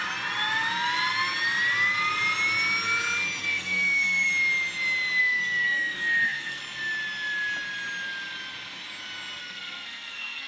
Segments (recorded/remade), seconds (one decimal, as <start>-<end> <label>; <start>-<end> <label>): 0.0-3.4 recorded; 3.4-4.3 remade; 4.3-5.2 recorded; 5.2-6.6 remade; 6.6-9.4 recorded; 9.4-10.5 remade